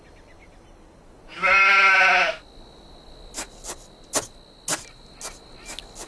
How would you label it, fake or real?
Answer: real